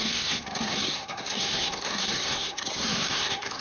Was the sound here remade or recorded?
remade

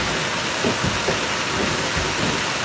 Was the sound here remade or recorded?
recorded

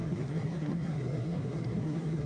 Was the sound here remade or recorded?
remade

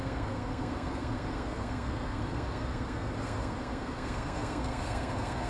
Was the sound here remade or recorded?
remade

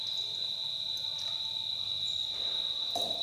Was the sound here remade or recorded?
recorded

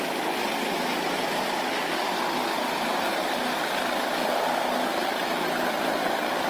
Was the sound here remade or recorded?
recorded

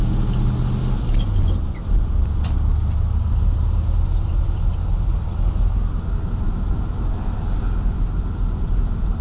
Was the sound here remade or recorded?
recorded